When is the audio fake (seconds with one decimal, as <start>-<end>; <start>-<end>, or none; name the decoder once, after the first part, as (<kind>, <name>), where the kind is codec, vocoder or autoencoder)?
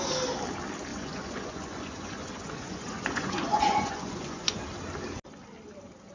0.9-4.6 (vocoder, Vocos)